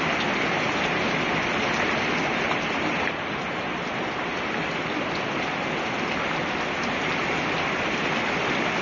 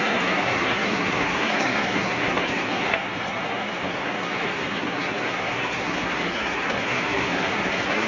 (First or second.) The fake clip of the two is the second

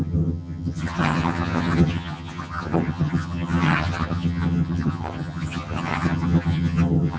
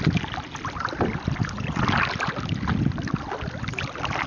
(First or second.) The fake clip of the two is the first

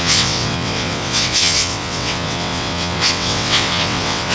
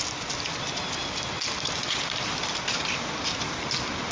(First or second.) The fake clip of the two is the first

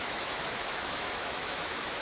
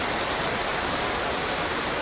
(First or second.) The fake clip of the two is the first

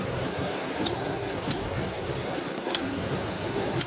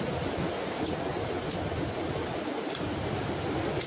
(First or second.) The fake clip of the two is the first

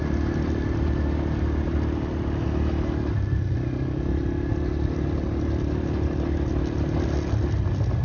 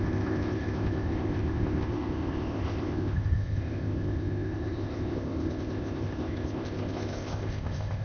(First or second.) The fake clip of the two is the second